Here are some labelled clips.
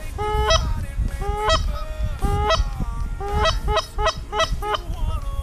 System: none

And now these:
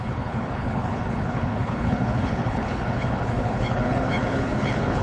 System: codec, HILCodec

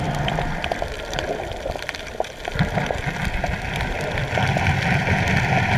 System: none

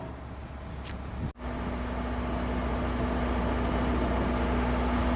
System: none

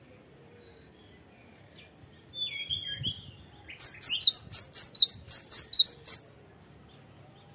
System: none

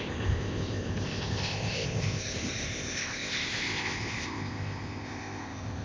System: codec, ZipCodec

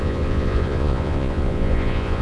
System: vocoder, Vocos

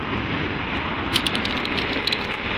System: none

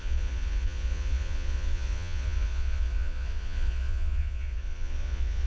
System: vocoder, Vocos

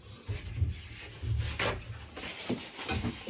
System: none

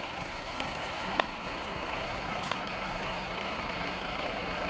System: codec, SNAC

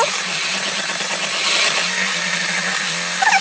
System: none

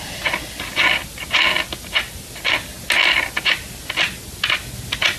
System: none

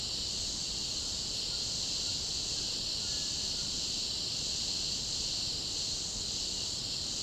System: none